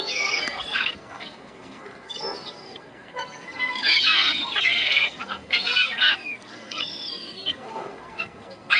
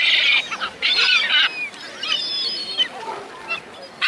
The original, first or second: second